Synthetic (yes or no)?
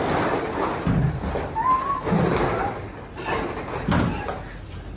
no